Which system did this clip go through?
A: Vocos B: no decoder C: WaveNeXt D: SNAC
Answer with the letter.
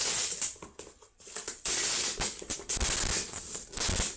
B